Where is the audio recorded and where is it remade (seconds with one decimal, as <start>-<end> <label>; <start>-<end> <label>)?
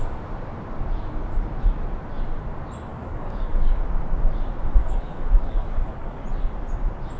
0.0-2.9 recorded; 2.9-3.8 remade; 3.8-4.8 recorded; 4.8-6.2 remade; 6.2-7.2 recorded